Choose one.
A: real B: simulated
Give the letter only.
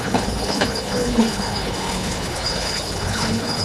B